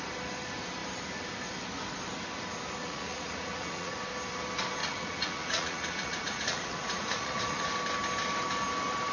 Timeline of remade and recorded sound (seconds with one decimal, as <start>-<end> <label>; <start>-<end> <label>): 0.0-2.8 recorded; 2.8-3.9 remade; 3.9-4.8 recorded; 4.8-7.7 remade; 7.7-9.1 recorded